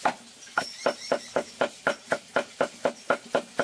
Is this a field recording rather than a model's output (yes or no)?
yes